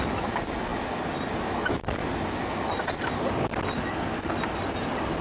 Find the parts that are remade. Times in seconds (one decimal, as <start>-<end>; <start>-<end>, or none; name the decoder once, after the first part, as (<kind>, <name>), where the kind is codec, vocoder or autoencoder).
none